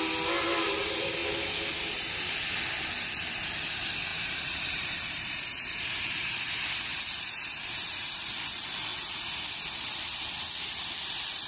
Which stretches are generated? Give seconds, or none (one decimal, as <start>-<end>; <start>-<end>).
4.1-6.5; 6.9-8.3